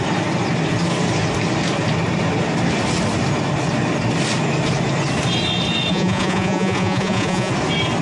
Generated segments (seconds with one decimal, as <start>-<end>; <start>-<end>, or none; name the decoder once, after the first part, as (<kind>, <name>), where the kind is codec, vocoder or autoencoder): 5.9-7.5 (vocoder, Vocos)